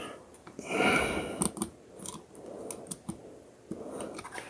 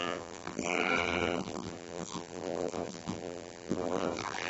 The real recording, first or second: first